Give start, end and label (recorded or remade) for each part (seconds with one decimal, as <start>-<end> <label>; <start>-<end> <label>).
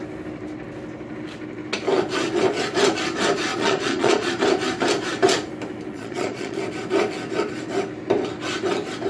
0.0-3.5 recorded; 3.5-4.3 remade; 4.3-5.9 recorded; 5.9-6.6 remade; 6.6-9.1 recorded